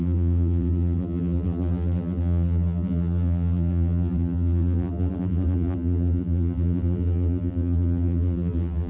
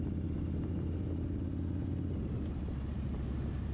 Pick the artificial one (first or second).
first